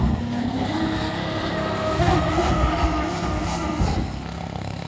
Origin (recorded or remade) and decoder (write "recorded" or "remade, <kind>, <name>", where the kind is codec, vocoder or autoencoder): remade, codec, SNAC